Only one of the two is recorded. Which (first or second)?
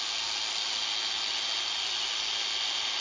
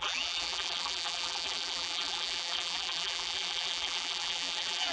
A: first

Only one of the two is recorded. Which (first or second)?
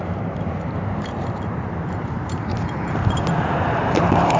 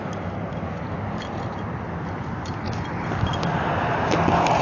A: second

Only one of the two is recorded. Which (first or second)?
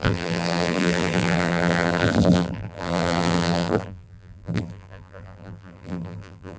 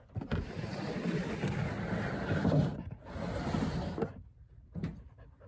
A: second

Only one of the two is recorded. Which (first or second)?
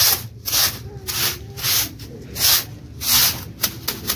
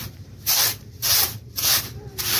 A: first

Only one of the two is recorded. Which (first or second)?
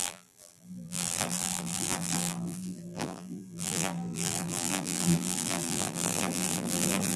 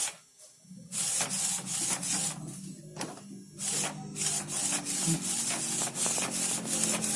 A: second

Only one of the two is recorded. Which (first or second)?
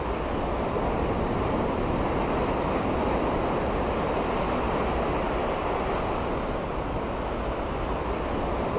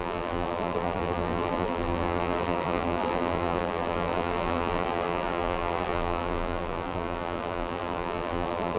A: first